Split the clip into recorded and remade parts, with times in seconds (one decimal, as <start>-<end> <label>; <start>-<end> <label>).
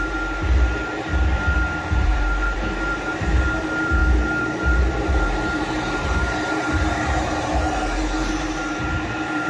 0.0-9.5 remade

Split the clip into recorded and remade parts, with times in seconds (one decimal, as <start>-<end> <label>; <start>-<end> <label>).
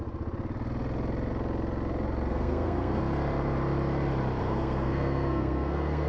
0.0-2.3 recorded; 2.3-3.0 remade; 3.0-4.4 recorded; 4.4-6.1 remade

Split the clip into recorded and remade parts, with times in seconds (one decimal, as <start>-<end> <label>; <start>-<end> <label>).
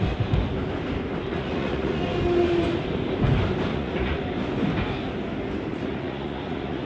0.0-1.3 recorded; 1.3-2.0 remade; 2.0-3.7 recorded; 3.7-4.2 remade; 4.2-5.7 recorded; 5.7-6.9 remade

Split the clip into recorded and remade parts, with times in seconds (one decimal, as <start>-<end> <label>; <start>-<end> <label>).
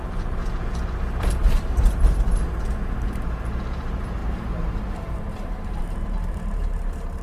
0.0-0.4 remade; 0.4-1.3 recorded; 1.3-7.2 remade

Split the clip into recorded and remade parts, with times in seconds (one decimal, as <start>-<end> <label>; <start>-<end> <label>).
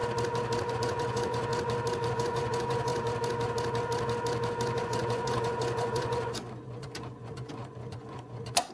0.0-0.7 recorded; 0.7-1.5 remade; 1.5-2.1 recorded; 2.1-2.9 remade; 2.9-4.8 recorded; 4.8-8.7 remade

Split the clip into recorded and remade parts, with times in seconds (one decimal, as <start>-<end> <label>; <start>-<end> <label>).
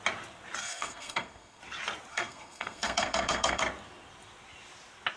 0.0-0.6 recorded; 0.6-1.6 remade; 1.6-2.1 recorded; 2.1-3.6 remade; 3.6-5.2 recorded